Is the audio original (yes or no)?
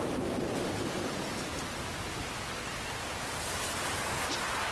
yes